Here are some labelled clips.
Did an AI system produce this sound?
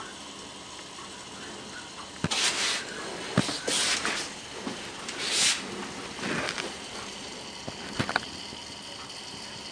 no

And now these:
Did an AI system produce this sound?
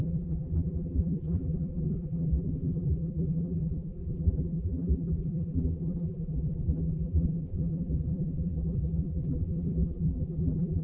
yes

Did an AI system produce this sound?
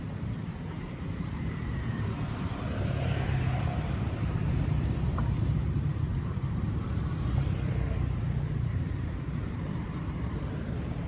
yes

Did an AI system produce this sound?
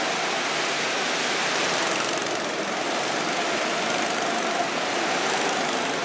yes